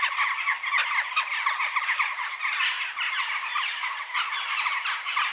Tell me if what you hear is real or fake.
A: real